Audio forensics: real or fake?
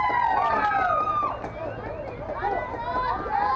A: real